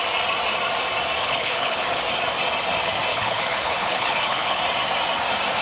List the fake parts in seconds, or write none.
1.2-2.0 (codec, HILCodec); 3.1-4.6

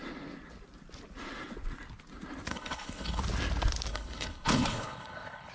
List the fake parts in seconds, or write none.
2.5-3.2 (codec, HILCodec); 3.9-5.5

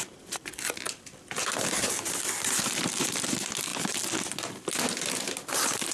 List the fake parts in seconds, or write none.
none

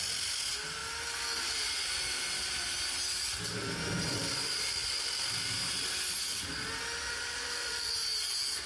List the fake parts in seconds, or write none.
none

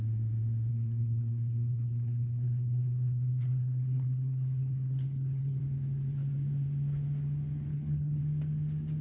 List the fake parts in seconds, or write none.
0.7-5.6 (codec, HILCodec); 7.7-8.2